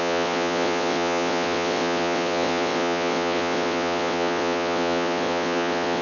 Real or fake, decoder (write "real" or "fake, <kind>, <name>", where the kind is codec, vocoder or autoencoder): fake, vocoder, WaveNeXt